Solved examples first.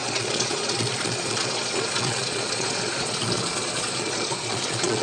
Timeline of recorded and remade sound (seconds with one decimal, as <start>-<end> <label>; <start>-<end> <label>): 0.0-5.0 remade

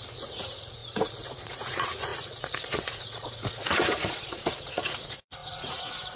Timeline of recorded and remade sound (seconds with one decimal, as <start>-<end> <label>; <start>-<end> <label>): 0.0-6.2 remade

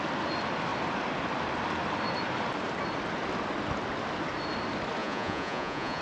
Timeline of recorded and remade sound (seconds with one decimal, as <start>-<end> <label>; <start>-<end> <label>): 0.0-5.0 recorded; 5.0-6.0 remade

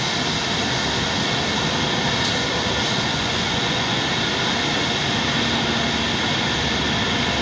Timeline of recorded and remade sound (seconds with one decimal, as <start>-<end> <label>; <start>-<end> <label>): 0.0-3.1 recorded; 3.1-4.0 remade; 4.0-7.4 recorded

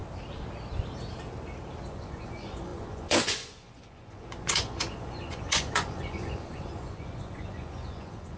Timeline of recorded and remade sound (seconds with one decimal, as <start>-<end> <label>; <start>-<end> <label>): 0.0-1.9 recorded; 1.9-8.4 remade